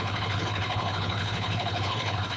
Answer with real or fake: fake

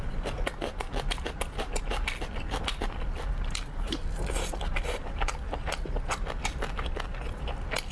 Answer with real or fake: real